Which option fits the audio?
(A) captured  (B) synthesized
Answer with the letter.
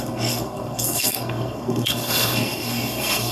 B